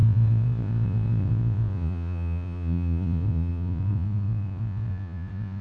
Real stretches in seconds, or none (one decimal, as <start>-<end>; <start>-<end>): none